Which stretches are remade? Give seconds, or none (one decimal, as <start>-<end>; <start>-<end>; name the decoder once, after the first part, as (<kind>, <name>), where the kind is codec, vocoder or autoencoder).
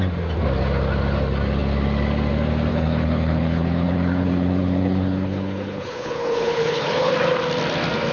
2.7-7.1 (codec, HILCodec)